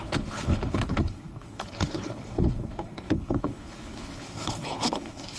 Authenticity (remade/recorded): remade